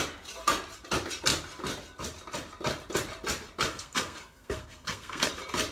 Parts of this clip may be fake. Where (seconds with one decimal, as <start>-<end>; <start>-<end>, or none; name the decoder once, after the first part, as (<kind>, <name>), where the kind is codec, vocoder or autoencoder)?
3.7-5.3 (codec, SNAC)